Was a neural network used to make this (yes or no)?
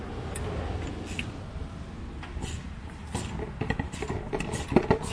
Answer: no